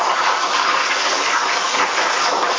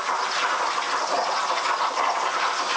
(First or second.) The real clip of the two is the second